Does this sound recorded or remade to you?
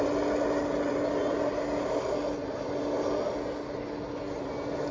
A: recorded